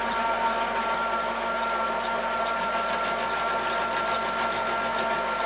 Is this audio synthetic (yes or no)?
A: no